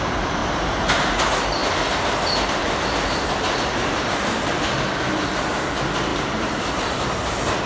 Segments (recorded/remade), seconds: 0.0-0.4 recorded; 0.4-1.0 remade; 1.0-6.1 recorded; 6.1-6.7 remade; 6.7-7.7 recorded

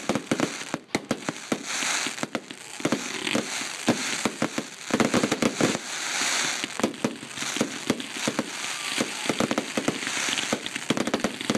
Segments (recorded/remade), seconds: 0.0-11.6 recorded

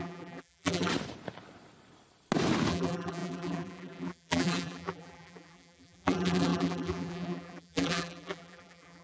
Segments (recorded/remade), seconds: 0.0-0.9 remade; 0.9-2.7 recorded; 2.7-9.0 remade